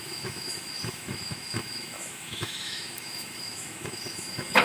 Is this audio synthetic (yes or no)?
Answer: yes